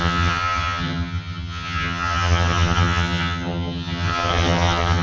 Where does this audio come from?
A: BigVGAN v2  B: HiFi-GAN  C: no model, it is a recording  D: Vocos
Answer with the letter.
B